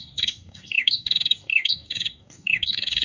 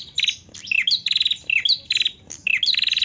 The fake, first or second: first